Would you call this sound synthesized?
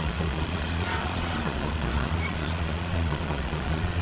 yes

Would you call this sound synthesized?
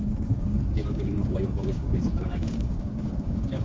yes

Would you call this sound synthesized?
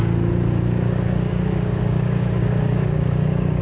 yes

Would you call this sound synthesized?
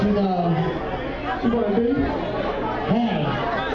no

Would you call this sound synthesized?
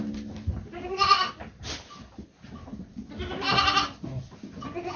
no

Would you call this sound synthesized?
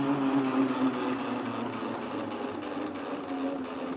no